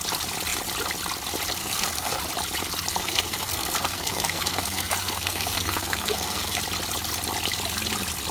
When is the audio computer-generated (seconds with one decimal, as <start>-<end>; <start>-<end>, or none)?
1.6-2.2; 2.9-6.6